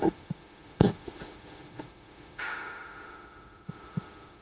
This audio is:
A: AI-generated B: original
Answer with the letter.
A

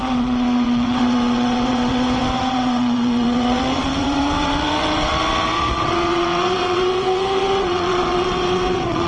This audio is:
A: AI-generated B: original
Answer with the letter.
A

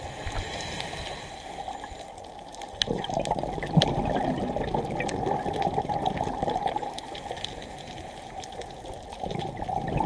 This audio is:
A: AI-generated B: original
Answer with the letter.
B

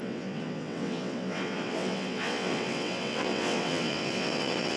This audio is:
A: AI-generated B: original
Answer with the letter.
A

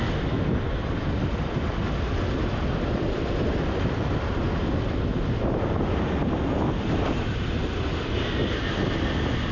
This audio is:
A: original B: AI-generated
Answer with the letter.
A